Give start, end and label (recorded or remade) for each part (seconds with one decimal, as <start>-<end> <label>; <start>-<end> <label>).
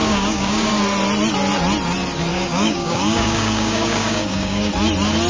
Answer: 0.0-0.7 remade; 0.7-2.3 recorded; 2.3-4.7 remade; 4.7-5.3 recorded